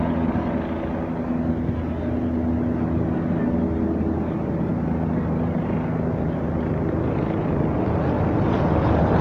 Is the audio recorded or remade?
recorded